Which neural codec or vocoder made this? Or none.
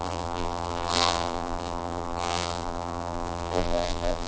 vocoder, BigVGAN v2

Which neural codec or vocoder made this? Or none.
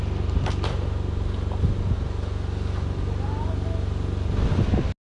none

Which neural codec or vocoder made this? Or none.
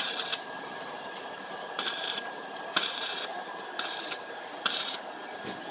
vocoder, BigVGAN v2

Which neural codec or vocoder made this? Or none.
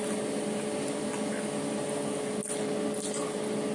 none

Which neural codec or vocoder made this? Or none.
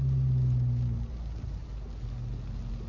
none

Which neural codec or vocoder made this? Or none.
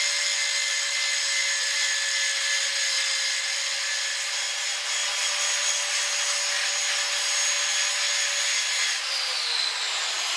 none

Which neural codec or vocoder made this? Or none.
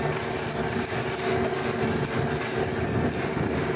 none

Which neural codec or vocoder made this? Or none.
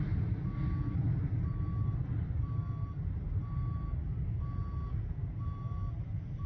none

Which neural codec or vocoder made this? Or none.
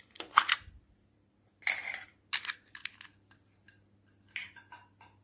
none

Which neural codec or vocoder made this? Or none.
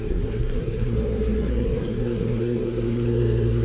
codec, SNAC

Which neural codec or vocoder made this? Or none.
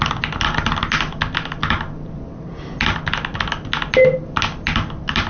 none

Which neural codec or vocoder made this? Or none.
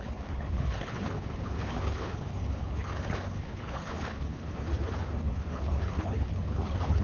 codec, HILCodec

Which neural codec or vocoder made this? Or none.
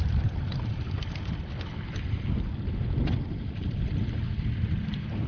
none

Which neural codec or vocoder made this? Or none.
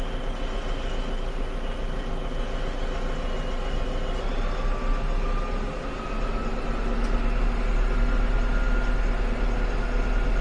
none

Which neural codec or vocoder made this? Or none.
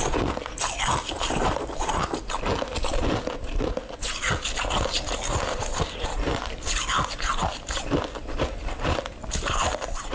none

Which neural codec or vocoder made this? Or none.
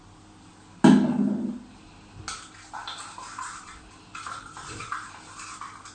none